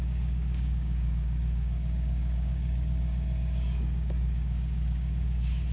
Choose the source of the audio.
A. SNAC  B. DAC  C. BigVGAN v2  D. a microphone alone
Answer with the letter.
B